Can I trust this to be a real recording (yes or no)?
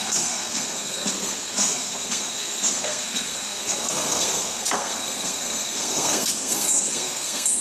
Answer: no